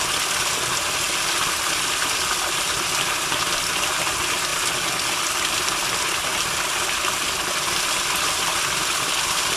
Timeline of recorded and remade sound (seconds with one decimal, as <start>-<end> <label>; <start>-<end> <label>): 0.0-9.6 recorded